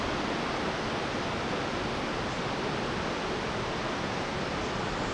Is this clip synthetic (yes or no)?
no